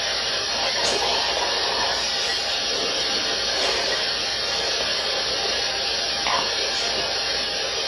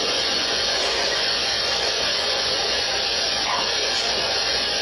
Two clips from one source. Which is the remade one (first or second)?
second